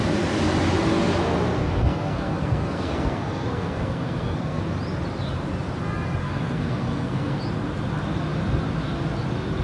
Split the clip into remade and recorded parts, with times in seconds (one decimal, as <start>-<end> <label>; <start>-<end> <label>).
0.0-1.5 recorded; 1.5-4.6 remade; 4.6-6.2 recorded; 6.2-7.4 remade; 7.4-9.6 recorded